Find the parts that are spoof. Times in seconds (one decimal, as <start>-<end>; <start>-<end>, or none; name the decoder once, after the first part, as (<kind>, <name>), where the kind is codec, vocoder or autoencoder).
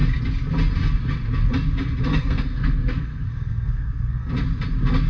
2.1-4.3 (codec, SNAC)